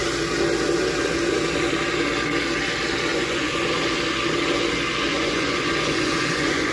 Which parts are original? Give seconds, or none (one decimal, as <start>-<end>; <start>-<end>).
0.0-3.1; 3.7-5.1